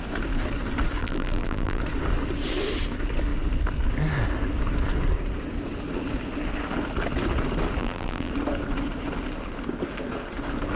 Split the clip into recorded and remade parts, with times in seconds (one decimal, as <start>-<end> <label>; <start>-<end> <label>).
0.0-1.0 recorded; 1.0-1.8 remade; 1.8-7.8 recorded; 7.8-8.3 remade; 8.3-10.8 recorded